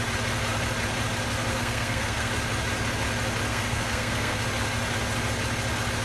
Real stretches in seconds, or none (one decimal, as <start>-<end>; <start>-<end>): 0.0-1.5; 2.3-3.5; 4.4-6.0